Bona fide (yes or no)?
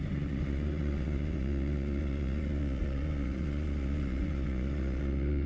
no